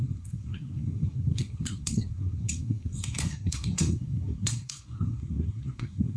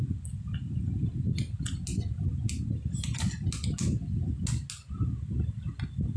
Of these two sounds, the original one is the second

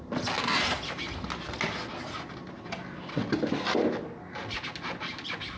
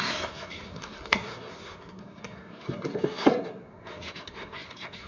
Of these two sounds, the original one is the first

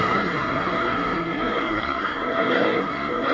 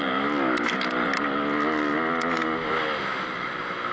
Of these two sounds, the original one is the second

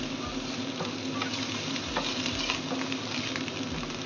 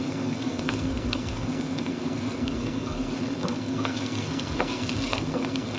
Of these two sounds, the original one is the first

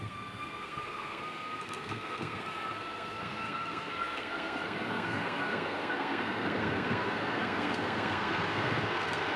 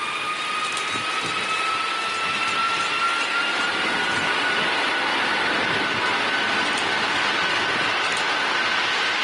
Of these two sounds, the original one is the second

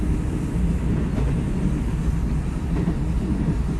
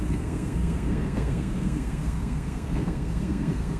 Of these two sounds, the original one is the first